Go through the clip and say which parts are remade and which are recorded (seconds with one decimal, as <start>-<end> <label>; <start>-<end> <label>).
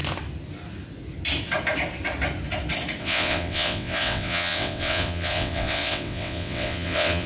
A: 0.0-3.0 recorded; 3.0-7.3 remade